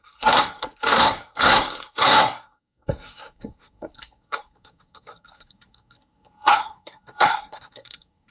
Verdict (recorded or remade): remade